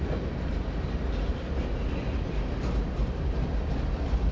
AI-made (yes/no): no